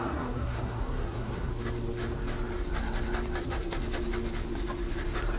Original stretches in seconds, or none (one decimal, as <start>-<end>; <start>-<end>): 1.5-3.4; 3.8-5.4